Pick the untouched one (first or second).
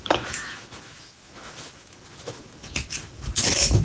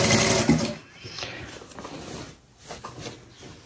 second